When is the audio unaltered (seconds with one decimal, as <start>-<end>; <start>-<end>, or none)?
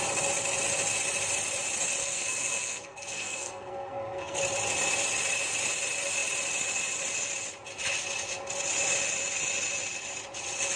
0.0-2.0; 4.4-10.8